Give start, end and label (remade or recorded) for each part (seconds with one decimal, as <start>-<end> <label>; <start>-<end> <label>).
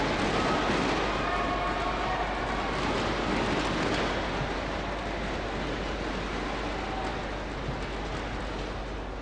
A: 0.0-9.2 recorded